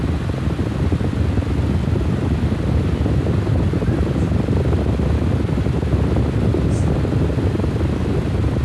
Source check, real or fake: real